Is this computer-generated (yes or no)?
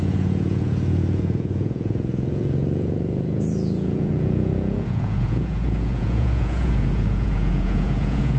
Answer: yes